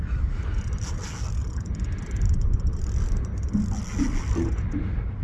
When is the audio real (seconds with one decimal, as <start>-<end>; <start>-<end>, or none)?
0.0-5.2